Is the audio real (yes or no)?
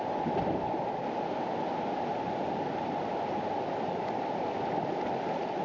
yes